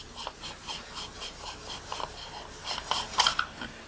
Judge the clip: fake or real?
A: real